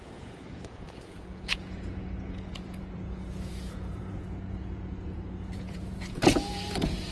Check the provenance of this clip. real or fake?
fake